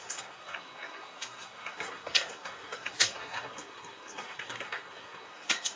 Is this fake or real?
fake